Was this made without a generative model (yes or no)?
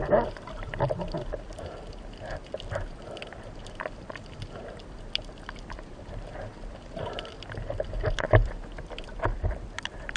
no